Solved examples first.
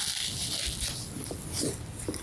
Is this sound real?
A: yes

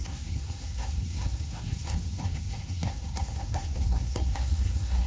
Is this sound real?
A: no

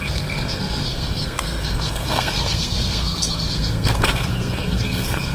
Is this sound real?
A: no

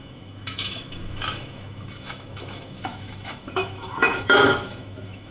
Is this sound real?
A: no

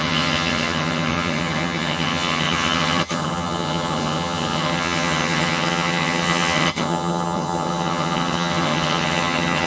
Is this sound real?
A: no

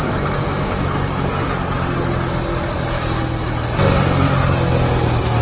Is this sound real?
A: yes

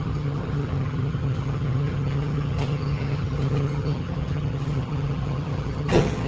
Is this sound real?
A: no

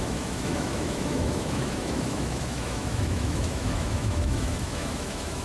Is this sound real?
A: no